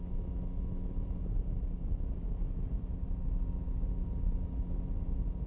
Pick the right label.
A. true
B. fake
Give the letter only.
A